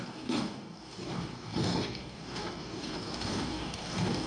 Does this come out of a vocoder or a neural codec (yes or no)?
yes